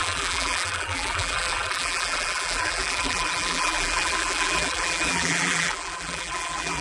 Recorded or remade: remade